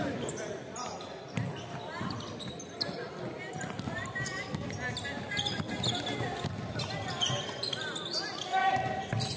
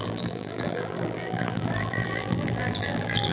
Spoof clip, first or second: second